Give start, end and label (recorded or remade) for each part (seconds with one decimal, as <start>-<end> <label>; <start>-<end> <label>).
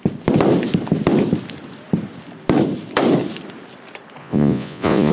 0.0-4.2 recorded; 4.2-5.1 remade